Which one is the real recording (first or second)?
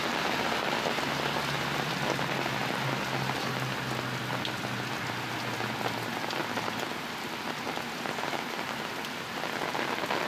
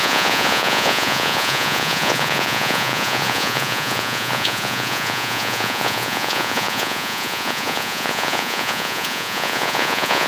first